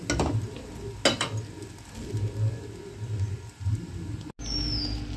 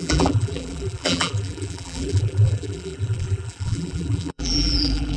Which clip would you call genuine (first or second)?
first